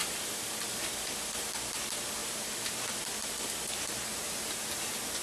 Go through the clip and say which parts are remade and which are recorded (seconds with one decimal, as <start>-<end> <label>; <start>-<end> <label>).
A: 0.0-1.0 remade; 1.0-4.1 recorded; 4.1-5.2 remade